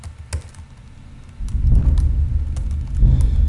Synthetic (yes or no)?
no